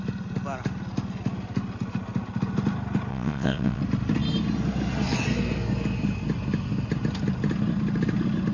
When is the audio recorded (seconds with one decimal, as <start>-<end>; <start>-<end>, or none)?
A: 0.0-3.1; 3.8-8.5